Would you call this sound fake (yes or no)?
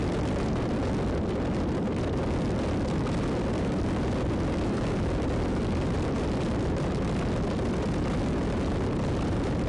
no